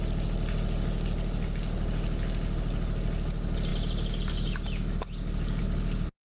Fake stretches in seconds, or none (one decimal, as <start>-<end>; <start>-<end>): none